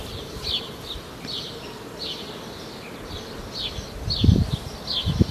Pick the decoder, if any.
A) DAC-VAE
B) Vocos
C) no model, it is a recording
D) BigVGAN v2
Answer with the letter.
C